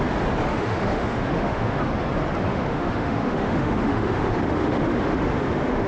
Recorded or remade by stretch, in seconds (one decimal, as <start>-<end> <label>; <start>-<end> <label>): 0.0-0.5 recorded; 0.5-1.8 remade; 1.8-2.5 recorded; 2.5-5.9 remade